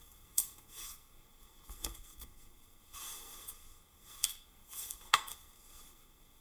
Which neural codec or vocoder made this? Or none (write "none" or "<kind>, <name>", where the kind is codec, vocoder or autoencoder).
codec, SNAC